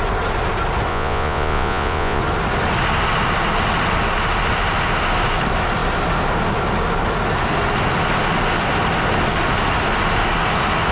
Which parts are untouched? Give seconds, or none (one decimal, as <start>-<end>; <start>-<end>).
0.0-0.9; 2.2-10.9